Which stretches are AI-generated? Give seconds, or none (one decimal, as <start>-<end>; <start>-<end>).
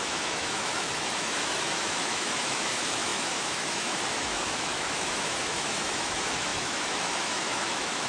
0.0-8.1